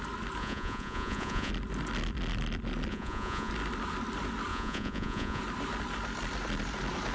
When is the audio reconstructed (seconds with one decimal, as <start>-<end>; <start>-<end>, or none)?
0.4-1.5; 2.9-3.5; 4.5-5.4